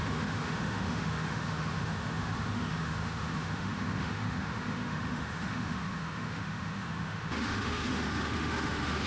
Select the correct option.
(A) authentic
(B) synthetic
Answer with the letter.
B